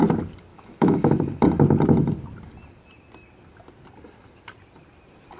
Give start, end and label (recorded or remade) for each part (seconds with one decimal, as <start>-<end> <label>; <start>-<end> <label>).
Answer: 0.0-0.5 recorded; 0.5-1.1 remade; 1.1-5.4 recorded